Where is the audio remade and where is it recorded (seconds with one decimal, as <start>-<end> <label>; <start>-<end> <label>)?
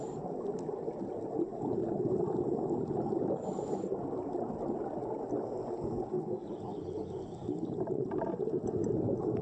0.0-9.4 recorded